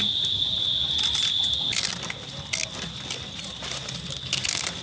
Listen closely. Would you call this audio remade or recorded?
recorded